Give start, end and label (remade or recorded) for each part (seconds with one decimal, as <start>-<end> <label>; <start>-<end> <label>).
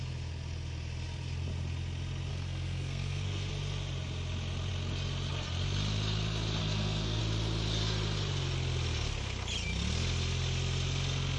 0.0-2.3 recorded; 2.3-3.5 remade; 3.5-6.6 recorded; 6.6-7.2 remade; 7.2-11.4 recorded